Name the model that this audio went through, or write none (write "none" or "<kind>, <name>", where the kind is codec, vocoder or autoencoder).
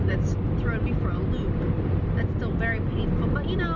none